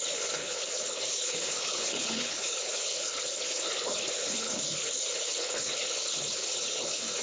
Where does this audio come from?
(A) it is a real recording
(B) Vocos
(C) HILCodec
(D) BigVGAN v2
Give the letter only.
C